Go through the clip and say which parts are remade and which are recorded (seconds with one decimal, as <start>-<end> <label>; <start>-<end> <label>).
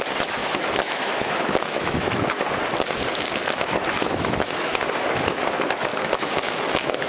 0.0-0.4 recorded; 0.4-2.3 remade; 2.3-3.4 recorded; 3.4-4.8 remade; 4.8-5.9 recorded; 5.9-7.1 remade